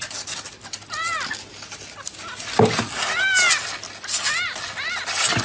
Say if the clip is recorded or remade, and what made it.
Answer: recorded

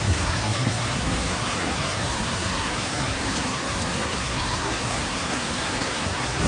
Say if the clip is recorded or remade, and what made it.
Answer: remade, codec, SNAC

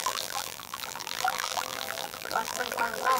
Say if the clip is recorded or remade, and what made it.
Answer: remade, vocoder, BigVGAN v2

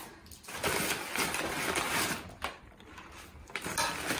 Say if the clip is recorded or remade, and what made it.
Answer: recorded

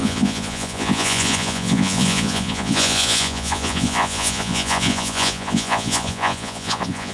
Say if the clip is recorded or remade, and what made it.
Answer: remade, vocoder, Vocos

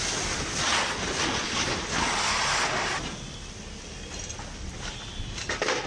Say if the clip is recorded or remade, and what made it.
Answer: recorded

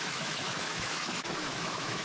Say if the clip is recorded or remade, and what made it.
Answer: remade, autoencoder, DAC-VAE